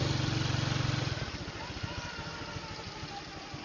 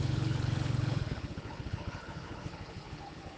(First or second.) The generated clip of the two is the second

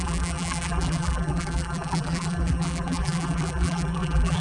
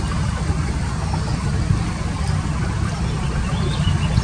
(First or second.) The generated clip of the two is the first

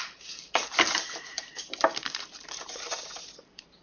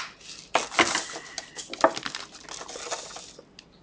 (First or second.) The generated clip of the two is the first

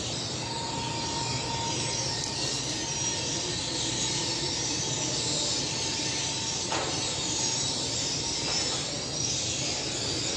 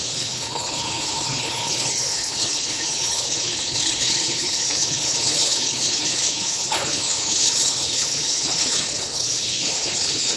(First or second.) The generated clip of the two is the second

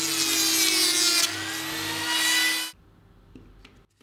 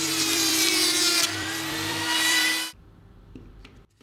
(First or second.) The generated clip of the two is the second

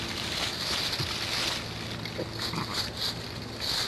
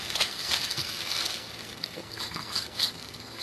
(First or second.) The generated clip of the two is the second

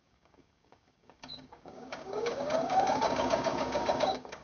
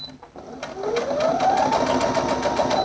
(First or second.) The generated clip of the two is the first